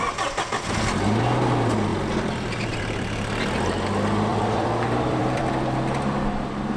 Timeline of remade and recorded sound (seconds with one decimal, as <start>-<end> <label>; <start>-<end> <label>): 0.0-1.9 recorded; 1.9-3.2 remade; 3.2-4.3 recorded; 4.3-6.2 remade; 6.2-6.8 recorded